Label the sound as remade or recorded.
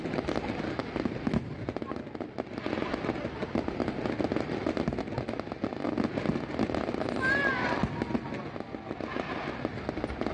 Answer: recorded